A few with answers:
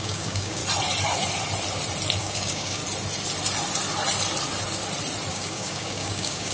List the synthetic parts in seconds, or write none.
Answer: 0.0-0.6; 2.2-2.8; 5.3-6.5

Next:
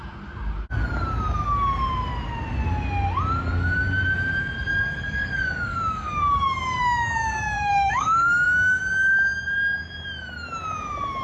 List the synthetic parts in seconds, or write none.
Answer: 4.7-8.8

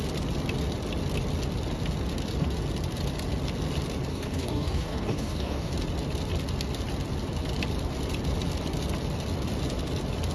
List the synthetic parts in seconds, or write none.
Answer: 4.1-5.7

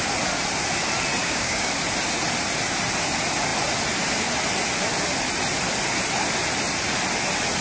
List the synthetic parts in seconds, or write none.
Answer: 1.2-1.7

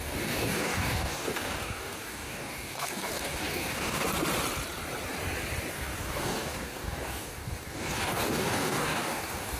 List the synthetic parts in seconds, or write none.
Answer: 0.0-4.0; 5.7-9.6